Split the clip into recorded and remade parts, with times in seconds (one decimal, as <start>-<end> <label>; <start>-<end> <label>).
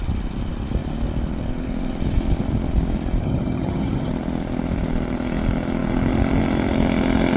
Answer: 0.0-3.2 recorded; 3.2-4.1 remade; 4.1-7.4 recorded